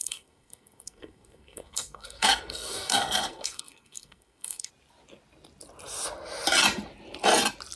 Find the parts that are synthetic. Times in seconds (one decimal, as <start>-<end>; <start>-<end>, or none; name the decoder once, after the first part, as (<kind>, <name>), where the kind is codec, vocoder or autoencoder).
0.0-4.7 (codec, SNAC)

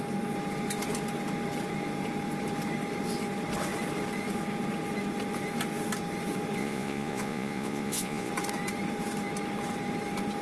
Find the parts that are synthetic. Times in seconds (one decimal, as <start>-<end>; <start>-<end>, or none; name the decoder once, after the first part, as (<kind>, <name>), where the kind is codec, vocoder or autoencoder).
6.6-8.3 (vocoder, Vocos)